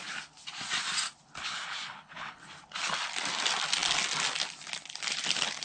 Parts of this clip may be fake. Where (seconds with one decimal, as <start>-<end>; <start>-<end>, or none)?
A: 1.4-2.4

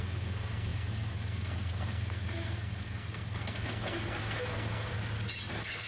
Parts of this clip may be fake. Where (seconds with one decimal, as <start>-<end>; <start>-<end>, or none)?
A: 0.0-4.9; 5.5-5.9